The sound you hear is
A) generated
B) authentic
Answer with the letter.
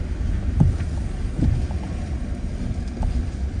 B